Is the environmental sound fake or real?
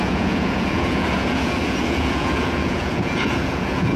fake